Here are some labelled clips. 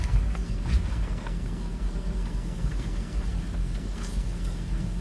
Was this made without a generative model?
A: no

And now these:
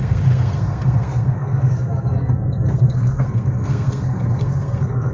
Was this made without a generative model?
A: no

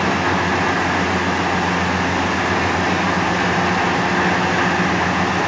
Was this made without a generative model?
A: yes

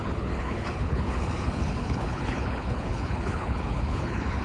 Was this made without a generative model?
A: no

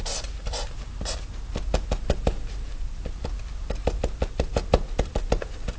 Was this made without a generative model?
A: no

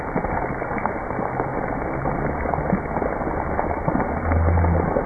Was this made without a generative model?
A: yes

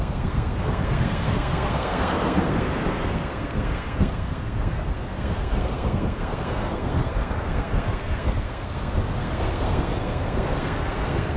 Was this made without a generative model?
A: no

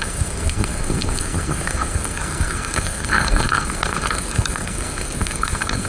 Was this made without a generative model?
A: no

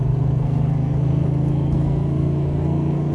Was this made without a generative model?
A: no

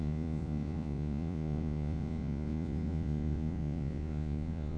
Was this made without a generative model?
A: no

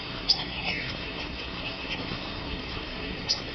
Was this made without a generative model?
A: no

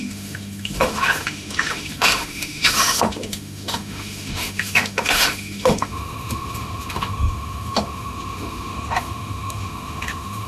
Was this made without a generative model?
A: no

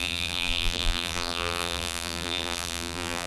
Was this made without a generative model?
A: no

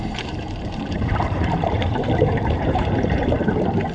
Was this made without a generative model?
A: no